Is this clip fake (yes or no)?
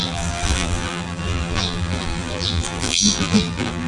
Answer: yes